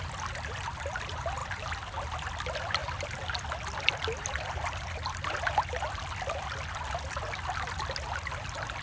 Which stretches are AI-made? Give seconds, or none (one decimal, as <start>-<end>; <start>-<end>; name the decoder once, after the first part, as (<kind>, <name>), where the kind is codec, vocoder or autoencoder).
none